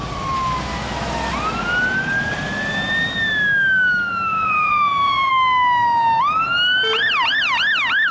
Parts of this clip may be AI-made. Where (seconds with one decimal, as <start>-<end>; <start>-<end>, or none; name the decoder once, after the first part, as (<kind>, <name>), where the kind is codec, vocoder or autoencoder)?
4.3-5.3 (vocoder, Vocos)